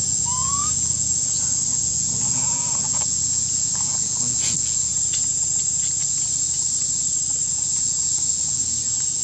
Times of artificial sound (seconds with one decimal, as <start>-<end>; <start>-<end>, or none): 0.0-4.9; 7.5-9.2